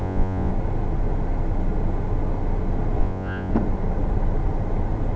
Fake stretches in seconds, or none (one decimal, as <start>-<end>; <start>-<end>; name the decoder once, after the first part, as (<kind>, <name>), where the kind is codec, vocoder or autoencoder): 0.0-0.5 (vocoder, Vocos); 3.0-3.5